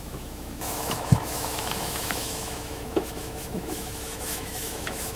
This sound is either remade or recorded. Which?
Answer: remade